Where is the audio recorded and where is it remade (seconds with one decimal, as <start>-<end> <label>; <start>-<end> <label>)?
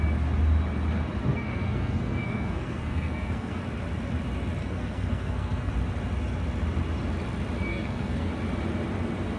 0.0-1.2 recorded; 1.2-3.6 remade; 3.6-4.6 recorded; 4.6-5.7 remade; 5.7-7.7 recorded; 7.7-8.3 remade; 8.3-9.4 recorded